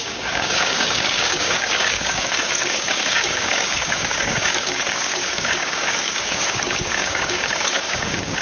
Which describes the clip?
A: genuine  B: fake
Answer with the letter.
B